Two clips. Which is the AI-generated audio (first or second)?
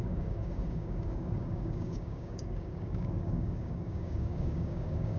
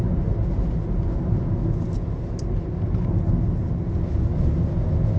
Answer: first